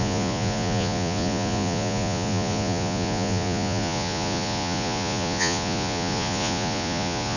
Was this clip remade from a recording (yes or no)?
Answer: yes